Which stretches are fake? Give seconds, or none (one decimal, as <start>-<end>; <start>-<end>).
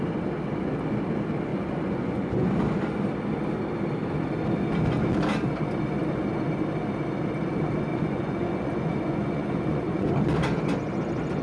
1.5-2.5; 7.9-10.1